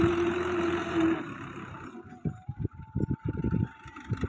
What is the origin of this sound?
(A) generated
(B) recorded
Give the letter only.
A